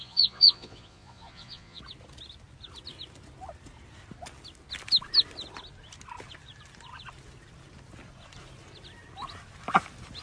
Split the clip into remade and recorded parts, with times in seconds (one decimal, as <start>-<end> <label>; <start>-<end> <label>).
0.0-1.8 remade; 1.8-10.2 recorded